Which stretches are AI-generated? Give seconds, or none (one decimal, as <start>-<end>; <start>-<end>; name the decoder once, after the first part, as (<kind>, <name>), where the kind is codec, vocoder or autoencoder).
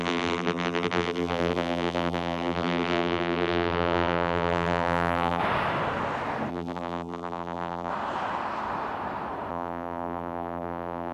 0.0-5.4 (vocoder, BigVGAN v2); 6.5-7.9; 9.5-11.1